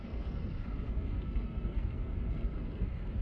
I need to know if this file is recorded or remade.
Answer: remade